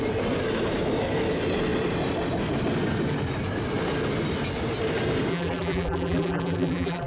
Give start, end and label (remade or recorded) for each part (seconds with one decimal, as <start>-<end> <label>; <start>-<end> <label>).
0.0-5.3 recorded; 5.3-7.1 remade